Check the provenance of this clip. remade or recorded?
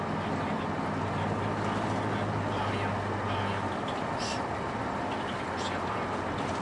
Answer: recorded